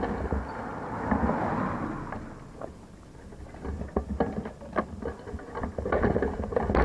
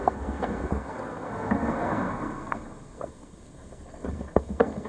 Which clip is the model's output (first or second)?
second